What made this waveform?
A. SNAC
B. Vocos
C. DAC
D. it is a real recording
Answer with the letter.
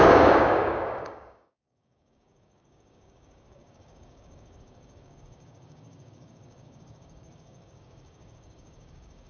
C